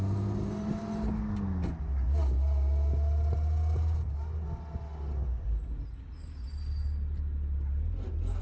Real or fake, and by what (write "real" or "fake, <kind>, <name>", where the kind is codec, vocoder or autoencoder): real